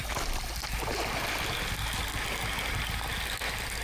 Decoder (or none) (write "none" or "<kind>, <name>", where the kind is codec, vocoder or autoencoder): none